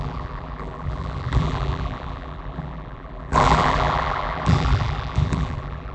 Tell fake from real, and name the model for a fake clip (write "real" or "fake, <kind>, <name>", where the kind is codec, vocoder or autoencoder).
fake, vocoder, BigVGAN v2